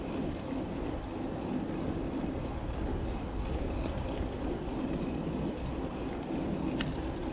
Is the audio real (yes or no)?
yes